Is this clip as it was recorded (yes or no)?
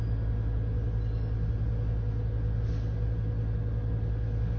yes